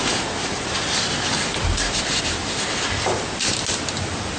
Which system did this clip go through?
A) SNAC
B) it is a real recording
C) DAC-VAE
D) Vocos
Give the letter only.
B